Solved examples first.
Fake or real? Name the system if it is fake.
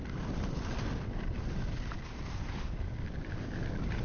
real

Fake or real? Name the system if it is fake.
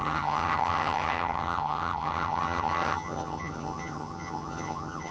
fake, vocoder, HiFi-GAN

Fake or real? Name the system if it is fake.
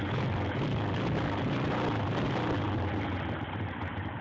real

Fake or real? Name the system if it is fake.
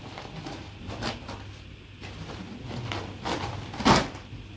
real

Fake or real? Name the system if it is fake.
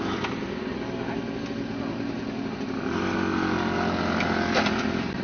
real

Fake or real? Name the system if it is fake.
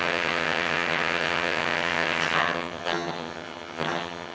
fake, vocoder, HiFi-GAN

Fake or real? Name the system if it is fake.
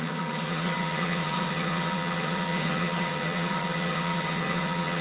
fake, vocoder, HiFi-GAN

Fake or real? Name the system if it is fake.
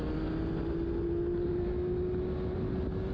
real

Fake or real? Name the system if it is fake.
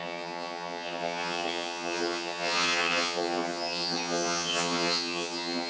fake, vocoder, HiFi-GAN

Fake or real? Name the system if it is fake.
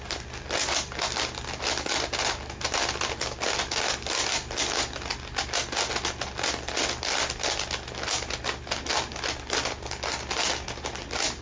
real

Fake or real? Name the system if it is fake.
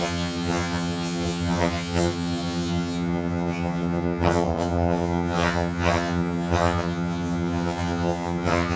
fake, vocoder, HiFi-GAN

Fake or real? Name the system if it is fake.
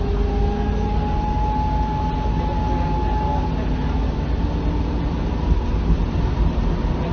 real